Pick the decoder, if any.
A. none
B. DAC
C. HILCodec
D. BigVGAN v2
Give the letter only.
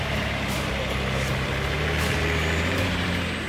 D